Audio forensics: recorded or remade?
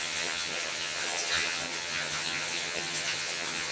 remade